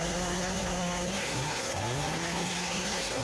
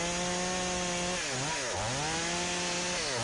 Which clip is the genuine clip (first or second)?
second